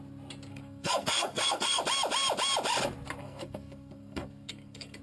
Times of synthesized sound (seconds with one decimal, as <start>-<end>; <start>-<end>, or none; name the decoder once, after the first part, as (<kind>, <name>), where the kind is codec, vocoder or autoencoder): 0.5-1.8 (codec, SNAC); 3.2-5.0